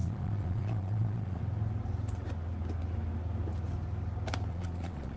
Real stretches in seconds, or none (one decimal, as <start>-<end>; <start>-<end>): 1.4-4.5